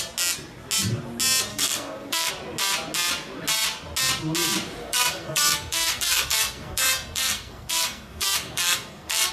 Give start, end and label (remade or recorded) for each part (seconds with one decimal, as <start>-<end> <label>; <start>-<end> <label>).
0.0-1.5 recorded; 1.5-2.3 remade; 2.3-4.8 recorded; 4.8-9.3 remade